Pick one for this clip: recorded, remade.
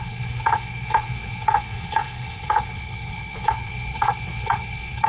remade